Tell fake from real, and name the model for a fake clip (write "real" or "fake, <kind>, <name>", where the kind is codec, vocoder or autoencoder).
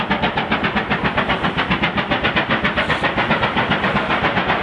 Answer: real